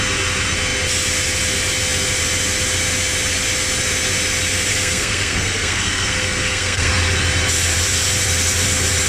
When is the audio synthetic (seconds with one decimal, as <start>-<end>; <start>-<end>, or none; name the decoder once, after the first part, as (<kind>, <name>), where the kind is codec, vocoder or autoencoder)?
4.7-6.9 (codec, SNAC)